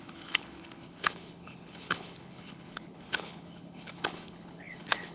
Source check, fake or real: fake